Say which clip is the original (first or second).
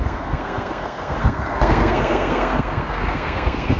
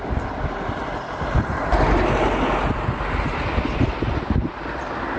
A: second